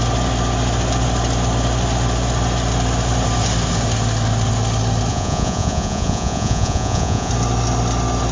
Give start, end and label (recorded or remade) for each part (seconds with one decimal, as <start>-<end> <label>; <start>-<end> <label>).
0.0-5.1 recorded; 5.1-7.3 remade; 7.3-8.3 recorded